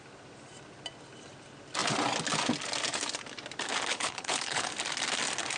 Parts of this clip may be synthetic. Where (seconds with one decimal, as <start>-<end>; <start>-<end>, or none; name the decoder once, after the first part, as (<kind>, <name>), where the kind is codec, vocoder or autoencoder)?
3.9-4.7 (codec, HILCodec)